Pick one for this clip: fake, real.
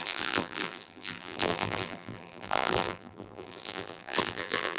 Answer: fake